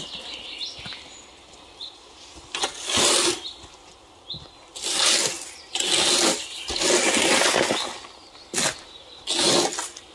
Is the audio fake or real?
real